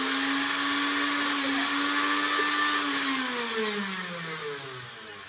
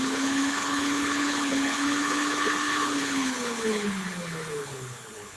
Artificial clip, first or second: second